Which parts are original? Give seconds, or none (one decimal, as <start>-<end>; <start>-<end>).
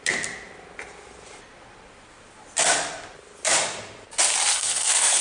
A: 0.0-4.5